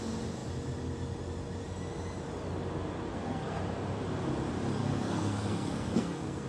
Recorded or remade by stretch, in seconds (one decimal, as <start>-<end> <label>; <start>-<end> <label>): 0.0-3.1 recorded; 3.1-3.6 remade; 3.6-4.8 recorded; 4.8-6.5 remade